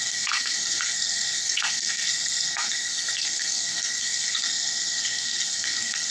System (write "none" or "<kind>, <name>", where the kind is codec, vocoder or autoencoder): codec, SNAC